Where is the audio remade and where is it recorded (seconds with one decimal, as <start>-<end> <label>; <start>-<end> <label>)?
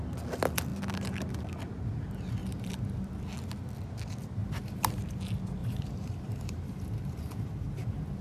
0.0-2.4 recorded; 2.4-3.2 remade; 3.2-4.4 recorded; 4.4-5.0 remade; 5.0-5.6 recorded; 5.6-8.2 remade